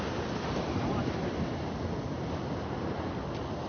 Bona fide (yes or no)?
yes